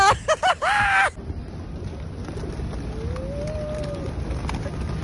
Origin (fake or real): real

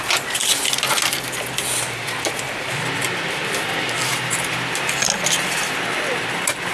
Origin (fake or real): real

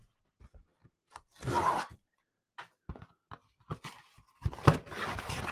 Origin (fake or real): real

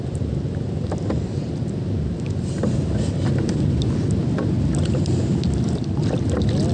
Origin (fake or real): real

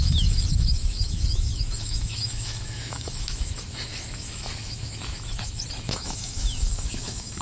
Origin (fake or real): fake